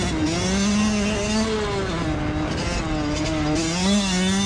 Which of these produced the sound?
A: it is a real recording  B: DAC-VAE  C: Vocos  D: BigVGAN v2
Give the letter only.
A